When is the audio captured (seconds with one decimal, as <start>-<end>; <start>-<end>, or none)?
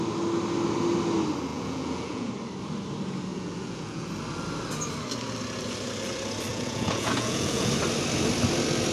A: 0.0-1.5; 2.3-3.3; 4.1-6.5; 7.7-8.9